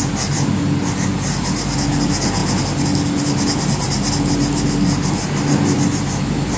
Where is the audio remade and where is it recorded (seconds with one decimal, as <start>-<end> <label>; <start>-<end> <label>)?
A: 0.0-6.6 recorded